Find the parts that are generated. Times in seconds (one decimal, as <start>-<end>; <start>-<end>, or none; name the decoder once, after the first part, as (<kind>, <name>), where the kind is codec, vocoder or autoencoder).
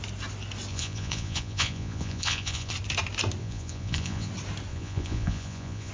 0.7-2.7 (vocoder, Vocos); 3.4-4.3; 4.7-5.9